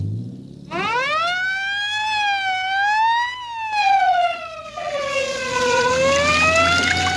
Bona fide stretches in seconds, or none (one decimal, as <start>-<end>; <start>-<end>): 0.0-3.8; 5.9-7.2